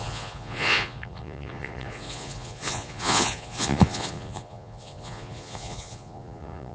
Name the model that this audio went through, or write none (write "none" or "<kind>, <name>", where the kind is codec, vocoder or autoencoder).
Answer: vocoder, Vocos